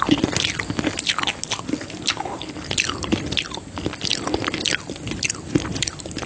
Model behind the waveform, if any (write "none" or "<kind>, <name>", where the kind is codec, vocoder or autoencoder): none